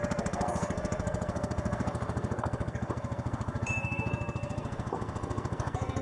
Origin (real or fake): fake